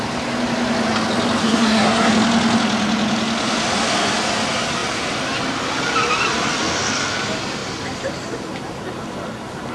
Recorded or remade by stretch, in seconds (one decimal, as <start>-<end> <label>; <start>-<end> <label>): 0.0-1.4 recorded; 1.4-2.1 remade; 2.1-9.7 recorded